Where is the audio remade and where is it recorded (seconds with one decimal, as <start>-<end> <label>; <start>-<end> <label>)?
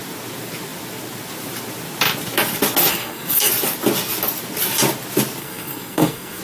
0.0-2.9 recorded; 2.9-3.5 remade; 3.5-5.4 recorded; 5.4-6.4 remade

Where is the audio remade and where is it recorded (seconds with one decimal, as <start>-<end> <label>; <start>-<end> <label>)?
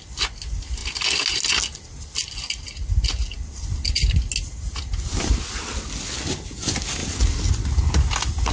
0.0-8.5 recorded